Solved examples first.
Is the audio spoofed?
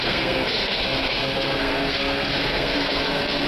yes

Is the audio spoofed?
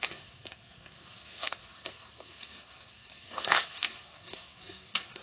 yes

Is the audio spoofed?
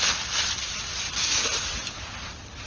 no